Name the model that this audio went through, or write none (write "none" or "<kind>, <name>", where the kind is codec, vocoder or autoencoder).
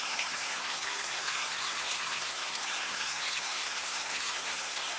codec, SNAC